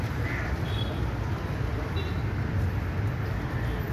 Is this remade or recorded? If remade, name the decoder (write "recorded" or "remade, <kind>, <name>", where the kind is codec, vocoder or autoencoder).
recorded